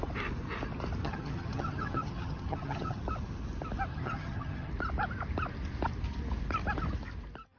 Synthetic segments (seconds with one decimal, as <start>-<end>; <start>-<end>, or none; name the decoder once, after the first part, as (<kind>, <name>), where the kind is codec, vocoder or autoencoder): 1.0-3.0 (vocoder, HiFi-GAN); 3.9-4.7